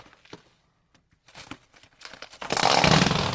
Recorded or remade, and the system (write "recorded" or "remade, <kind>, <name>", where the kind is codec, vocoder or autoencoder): recorded